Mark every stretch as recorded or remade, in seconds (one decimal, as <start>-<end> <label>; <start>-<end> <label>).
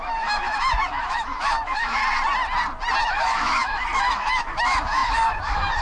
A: 0.0-2.0 remade; 2.0-3.0 recorded; 3.0-5.8 remade